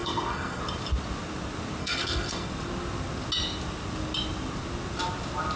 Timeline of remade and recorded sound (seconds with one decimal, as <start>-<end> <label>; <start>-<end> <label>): 0.0-0.6 remade; 0.6-1.8 recorded; 1.8-2.5 remade; 2.5-5.6 recorded